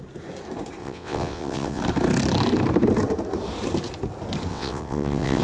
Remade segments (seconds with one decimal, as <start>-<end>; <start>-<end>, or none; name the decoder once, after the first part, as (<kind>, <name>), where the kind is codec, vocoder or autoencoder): 0.8-1.8 (vocoder, WaveNeXt); 4.5-5.4